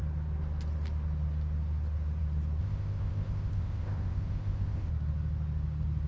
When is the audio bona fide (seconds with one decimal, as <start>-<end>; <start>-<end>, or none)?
0.0-2.6; 4.9-6.1